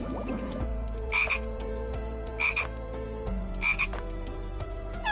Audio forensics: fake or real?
fake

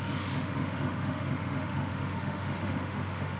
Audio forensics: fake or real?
fake